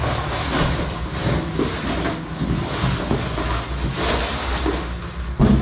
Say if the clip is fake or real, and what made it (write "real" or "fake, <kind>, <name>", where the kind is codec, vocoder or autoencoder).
real